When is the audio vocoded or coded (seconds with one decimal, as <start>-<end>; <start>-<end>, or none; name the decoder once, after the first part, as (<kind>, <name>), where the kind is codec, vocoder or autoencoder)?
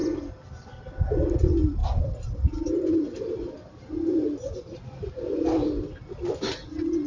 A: none